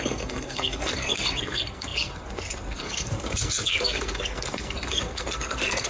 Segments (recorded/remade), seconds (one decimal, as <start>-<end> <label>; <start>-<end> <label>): 0.0-5.9 remade

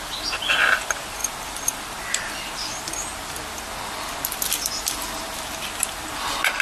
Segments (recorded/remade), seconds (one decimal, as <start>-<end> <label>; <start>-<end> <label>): 0.0-6.6 recorded

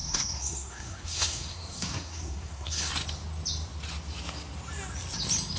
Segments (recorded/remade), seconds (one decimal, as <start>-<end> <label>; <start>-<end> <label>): 0.0-2.9 remade; 2.9-5.6 recorded